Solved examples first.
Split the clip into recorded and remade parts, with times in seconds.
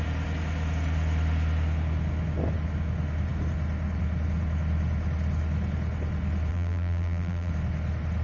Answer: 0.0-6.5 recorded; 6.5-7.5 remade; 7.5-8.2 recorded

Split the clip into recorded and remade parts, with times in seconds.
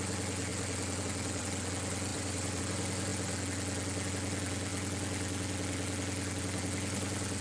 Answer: 0.0-2.1 recorded; 2.1-2.6 remade; 2.6-7.4 recorded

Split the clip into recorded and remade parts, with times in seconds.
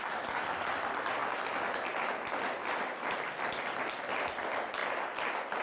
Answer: 0.0-5.6 recorded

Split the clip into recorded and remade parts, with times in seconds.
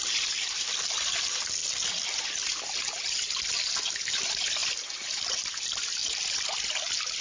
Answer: 0.0-1.6 remade; 1.6-3.3 recorded; 3.3-7.2 remade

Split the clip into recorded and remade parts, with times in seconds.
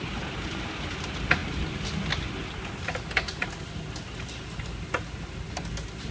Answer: 0.0-6.1 recorded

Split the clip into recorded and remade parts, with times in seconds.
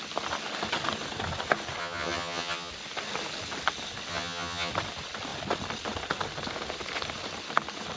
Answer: 0.0-1.8 recorded; 1.8-2.7 remade; 2.7-4.1 recorded; 4.1-4.7 remade; 4.7-8.0 recorded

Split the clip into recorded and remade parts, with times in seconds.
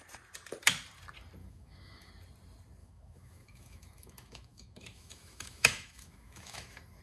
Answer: 0.0-1.4 recorded; 1.4-2.1 remade; 2.1-2.8 recorded; 2.8-7.0 remade